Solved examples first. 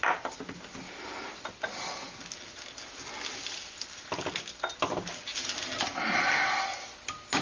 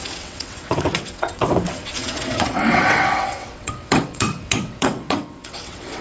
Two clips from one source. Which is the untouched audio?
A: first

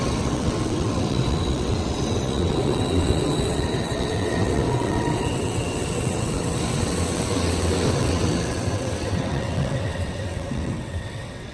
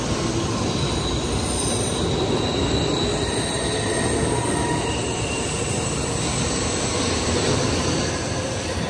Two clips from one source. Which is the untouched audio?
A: second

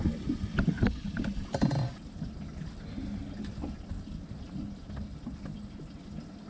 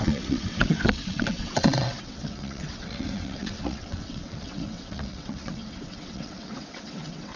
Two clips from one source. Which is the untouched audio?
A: first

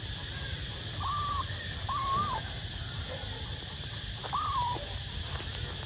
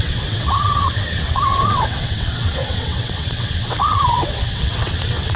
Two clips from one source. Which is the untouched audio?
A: first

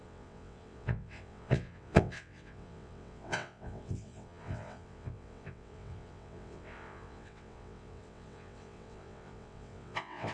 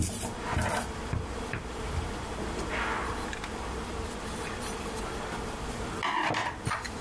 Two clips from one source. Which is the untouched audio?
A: second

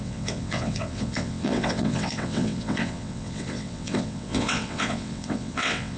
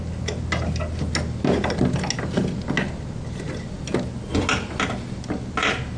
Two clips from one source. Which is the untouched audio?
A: second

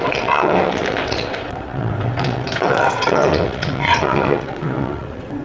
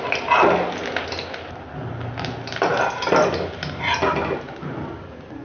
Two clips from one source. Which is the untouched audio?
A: second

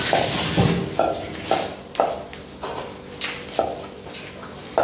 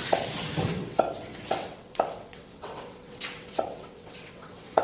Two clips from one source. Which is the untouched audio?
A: first